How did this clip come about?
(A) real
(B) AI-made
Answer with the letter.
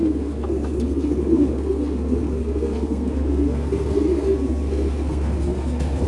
B